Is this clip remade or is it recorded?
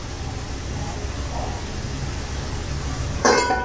recorded